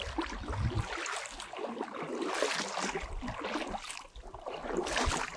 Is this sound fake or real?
real